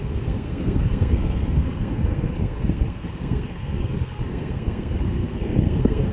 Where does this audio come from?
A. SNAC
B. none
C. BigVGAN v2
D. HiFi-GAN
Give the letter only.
A